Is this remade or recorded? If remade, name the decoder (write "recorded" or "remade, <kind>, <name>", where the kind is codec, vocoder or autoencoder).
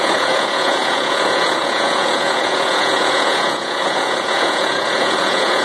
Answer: remade, vocoder, Vocos